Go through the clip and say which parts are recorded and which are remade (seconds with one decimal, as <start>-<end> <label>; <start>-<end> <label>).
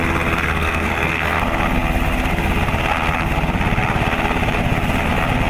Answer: 0.0-0.5 recorded; 0.5-1.4 remade; 1.4-5.5 recorded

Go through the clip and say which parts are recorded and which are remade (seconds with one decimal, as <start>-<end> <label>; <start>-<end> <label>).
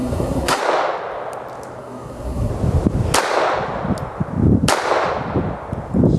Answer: 0.0-0.6 remade; 0.6-1.8 recorded; 1.8-2.5 remade; 2.5-6.2 recorded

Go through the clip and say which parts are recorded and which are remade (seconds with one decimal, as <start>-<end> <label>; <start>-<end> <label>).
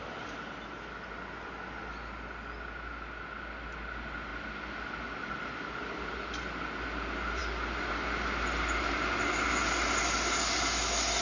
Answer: 0.0-11.2 recorded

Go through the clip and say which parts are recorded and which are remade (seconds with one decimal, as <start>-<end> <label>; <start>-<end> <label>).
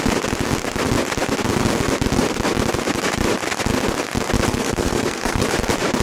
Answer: 0.0-4.5 recorded; 4.5-5.4 remade; 5.4-6.0 recorded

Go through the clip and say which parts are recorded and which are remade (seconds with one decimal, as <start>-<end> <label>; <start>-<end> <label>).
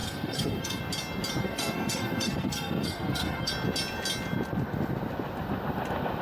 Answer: 0.0-0.8 remade; 0.8-1.4 recorded; 1.4-3.5 remade; 3.5-6.2 recorded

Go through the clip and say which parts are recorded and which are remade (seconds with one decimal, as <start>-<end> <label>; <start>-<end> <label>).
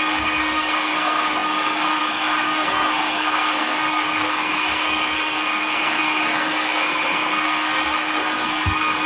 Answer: 0.0-9.1 remade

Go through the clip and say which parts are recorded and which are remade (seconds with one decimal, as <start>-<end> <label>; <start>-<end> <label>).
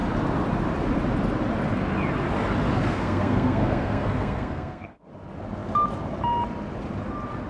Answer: 0.0-2.8 recorded; 2.8-5.1 remade; 5.1-7.5 recorded